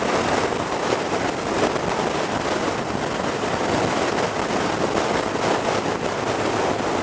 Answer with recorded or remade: recorded